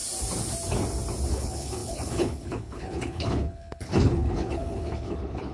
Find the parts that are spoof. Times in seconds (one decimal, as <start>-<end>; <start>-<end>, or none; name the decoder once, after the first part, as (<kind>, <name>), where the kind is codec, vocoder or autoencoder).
1.3-5.5 (codec, HILCodec)